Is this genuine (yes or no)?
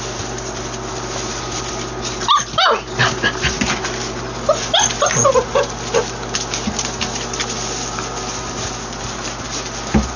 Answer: yes